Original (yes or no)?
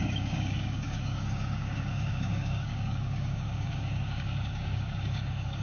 no